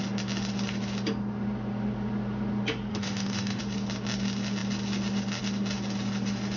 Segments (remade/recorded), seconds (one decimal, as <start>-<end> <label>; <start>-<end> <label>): 0.0-2.9 recorded; 2.9-3.6 remade; 3.6-6.6 recorded